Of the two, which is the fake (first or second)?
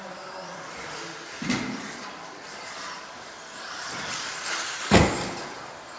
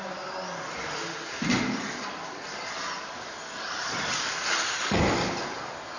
first